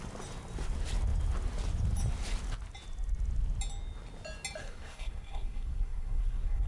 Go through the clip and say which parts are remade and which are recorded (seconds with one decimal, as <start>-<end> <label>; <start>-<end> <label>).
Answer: 0.0-4.6 recorded; 4.6-6.7 remade